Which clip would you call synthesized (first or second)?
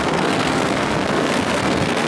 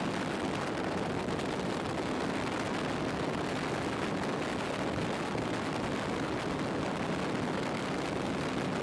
first